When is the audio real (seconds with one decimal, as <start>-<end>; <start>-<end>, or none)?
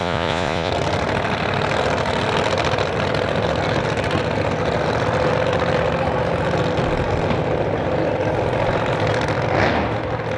0.7-10.4